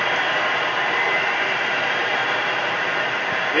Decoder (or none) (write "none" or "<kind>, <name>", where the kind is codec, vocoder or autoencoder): vocoder, BigVGAN v2